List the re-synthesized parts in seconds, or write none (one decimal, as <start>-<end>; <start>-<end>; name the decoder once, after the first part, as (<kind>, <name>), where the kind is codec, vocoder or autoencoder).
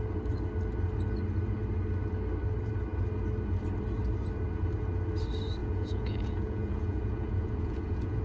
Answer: 5.6-8.2 (vocoder, Vocos)